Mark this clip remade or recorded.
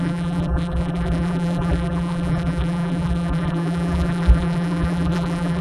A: remade